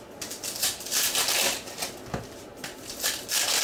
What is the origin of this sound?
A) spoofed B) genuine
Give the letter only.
B